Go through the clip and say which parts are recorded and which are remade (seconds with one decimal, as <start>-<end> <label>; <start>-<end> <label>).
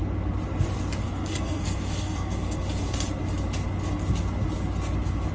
0.0-1.0 recorded; 1.0-2.6 remade; 2.6-5.3 recorded